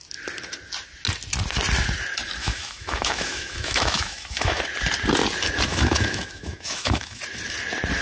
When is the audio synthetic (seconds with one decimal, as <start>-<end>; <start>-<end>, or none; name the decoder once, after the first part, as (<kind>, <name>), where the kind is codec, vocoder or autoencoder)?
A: 2.4-4.6 (autoencoder, DAC-VAE); 5.7-7.2